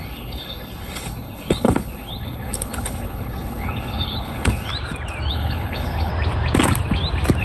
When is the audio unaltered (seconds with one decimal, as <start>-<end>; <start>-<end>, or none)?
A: 4.7-5.3; 6.1-7.4